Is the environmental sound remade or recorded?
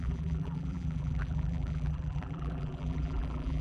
remade